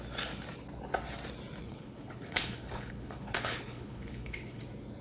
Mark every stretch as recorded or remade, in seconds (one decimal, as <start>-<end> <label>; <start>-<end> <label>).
0.0-1.6 recorded; 1.6-4.6 remade; 4.6-5.0 recorded